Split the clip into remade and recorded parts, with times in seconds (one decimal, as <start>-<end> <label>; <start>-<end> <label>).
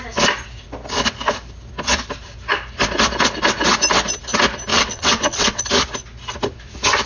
0.0-4.7 recorded; 4.7-5.6 remade; 5.6-7.1 recorded